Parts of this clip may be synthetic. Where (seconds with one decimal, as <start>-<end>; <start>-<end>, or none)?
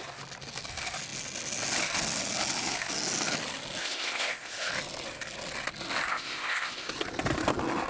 3.8-4.7; 6.1-6.9